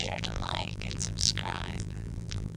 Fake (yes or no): yes